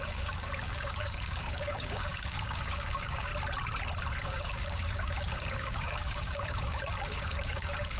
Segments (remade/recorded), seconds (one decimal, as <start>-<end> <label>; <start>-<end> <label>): 0.0-3.3 remade; 3.3-4.2 recorded; 4.2-8.0 remade

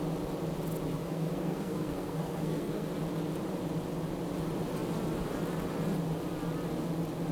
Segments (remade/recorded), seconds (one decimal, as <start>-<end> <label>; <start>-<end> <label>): 0.0-0.9 recorded; 0.9-2.9 remade; 2.9-7.3 recorded

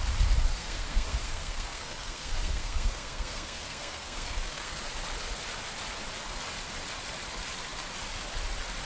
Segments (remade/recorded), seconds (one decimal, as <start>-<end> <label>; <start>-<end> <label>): 0.0-0.5 recorded; 0.5-4.8 remade; 4.8-8.8 recorded

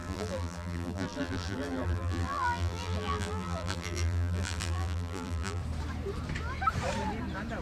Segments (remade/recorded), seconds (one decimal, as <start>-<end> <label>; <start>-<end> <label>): 0.0-5.6 remade; 5.6-7.6 recorded

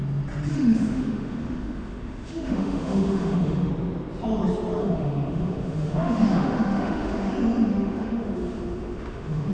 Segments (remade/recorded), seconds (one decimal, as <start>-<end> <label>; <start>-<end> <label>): 0.0-0.5 recorded; 0.5-3.7 remade; 3.7-4.8 recorded; 4.8-7.3 remade; 7.3-7.7 recorded; 7.7-9.5 remade